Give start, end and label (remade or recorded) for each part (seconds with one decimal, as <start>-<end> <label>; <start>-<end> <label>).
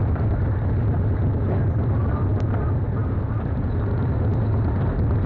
0.0-5.3 remade